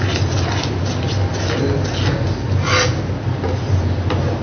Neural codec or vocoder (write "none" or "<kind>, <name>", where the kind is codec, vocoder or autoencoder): none